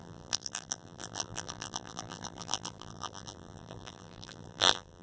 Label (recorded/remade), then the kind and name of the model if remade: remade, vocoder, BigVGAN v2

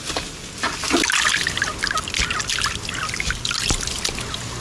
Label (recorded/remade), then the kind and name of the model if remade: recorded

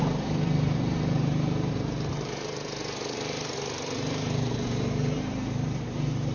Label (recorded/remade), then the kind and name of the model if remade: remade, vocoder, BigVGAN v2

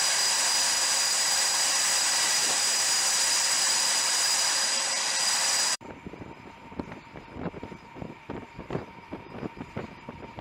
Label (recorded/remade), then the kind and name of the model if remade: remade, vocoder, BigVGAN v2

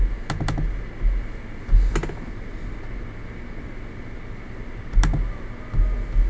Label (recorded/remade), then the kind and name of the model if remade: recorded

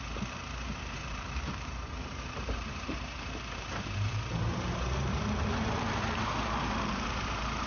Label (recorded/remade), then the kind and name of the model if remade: remade, vocoder, BigVGAN v2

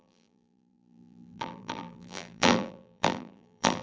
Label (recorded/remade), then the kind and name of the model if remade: remade, vocoder, BigVGAN v2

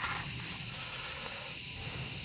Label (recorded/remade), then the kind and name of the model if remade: recorded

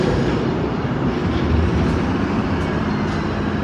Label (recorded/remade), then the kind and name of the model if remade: recorded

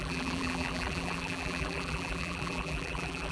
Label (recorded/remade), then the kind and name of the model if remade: remade, vocoder, BigVGAN v2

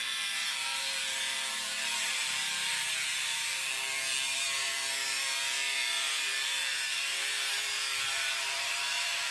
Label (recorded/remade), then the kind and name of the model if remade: remade, vocoder, BigVGAN v2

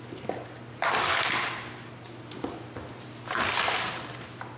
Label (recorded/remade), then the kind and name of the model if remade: recorded